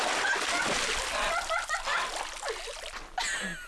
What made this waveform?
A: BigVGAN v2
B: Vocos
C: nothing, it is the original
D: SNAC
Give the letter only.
C